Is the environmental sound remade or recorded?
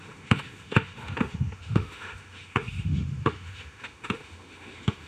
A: remade